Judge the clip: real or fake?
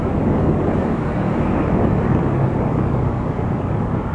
fake